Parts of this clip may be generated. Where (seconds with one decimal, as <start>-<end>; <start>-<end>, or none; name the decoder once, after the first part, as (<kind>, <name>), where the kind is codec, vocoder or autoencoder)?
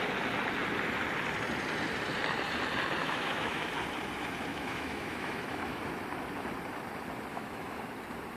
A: 3.0-3.7 (autoencoder, DAC-VAE); 4.5-5.8; 7.3-7.8